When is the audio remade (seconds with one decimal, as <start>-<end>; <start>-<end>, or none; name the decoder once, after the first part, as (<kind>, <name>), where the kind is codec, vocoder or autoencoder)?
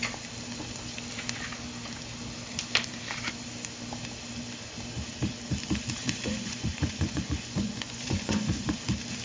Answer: 6.0-8.7 (vocoder, Vocos)